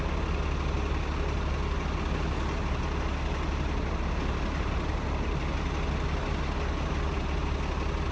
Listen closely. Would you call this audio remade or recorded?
recorded